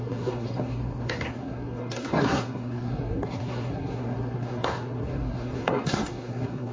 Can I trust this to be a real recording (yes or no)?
no